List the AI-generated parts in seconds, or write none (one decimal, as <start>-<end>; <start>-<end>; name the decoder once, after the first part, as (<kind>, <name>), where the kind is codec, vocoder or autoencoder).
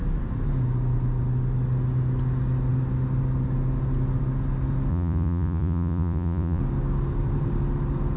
4.9-6.6 (vocoder, Vocos)